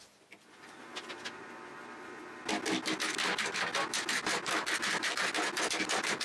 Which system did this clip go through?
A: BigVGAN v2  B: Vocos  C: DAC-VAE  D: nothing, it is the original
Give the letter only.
D